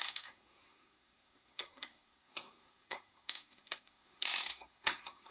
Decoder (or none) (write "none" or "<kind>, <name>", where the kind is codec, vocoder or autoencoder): codec, SNAC